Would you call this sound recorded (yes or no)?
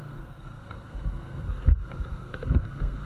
no